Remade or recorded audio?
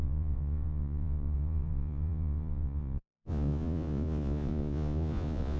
remade